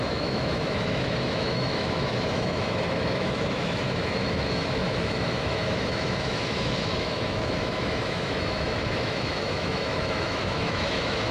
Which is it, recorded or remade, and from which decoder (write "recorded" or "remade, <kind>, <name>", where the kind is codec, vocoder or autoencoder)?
remade, autoencoder, DAC-VAE